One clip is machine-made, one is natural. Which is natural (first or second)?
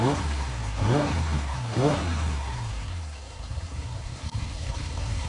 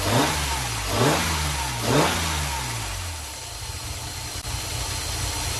second